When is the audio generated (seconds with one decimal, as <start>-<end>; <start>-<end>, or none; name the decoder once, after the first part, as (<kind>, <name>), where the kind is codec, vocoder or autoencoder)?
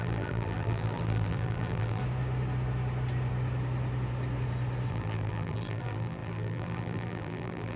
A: 0.0-2.0 (vocoder, BigVGAN v2); 4.9-7.8